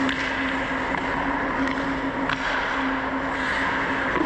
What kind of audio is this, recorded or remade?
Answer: recorded